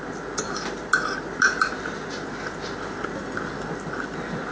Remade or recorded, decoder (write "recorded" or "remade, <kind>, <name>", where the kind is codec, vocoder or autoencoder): recorded